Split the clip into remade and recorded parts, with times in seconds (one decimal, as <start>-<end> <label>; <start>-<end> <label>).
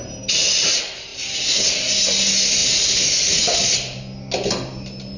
0.0-5.2 recorded